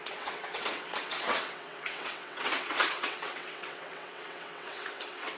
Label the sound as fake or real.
fake